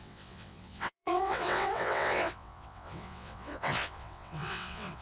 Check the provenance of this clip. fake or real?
fake